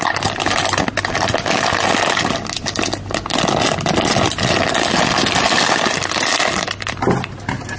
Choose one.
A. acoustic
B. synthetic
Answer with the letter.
A